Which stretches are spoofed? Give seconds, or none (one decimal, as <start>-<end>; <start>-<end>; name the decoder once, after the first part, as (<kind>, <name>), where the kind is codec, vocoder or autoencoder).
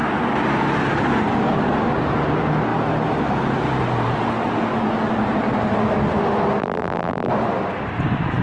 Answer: 6.6-7.3 (vocoder, BigVGAN v2)